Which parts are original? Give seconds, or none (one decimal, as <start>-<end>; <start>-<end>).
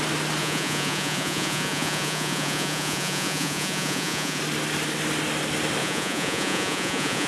0.0-0.4; 4.4-5.8